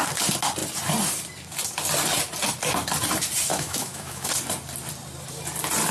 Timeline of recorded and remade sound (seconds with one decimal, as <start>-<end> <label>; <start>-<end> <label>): 0.0-3.5 recorded; 3.5-4.3 remade; 4.3-5.9 recorded